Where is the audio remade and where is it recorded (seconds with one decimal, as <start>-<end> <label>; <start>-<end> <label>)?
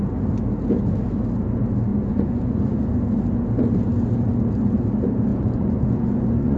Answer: 0.0-1.9 recorded; 1.9-3.0 remade; 3.0-5.3 recorded; 5.3-6.6 remade